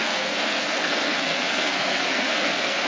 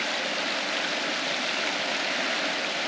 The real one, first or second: second